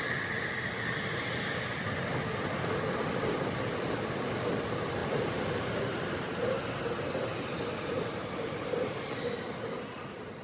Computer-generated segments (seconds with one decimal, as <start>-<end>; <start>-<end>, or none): none